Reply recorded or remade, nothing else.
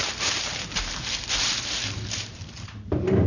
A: remade